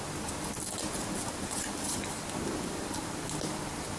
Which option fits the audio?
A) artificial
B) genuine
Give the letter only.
B